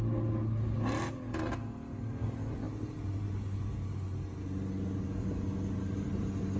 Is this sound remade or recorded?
recorded